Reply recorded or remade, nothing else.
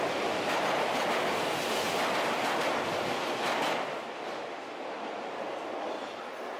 recorded